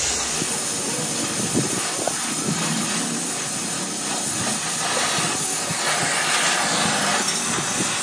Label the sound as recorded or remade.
recorded